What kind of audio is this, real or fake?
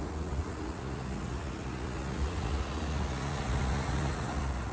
fake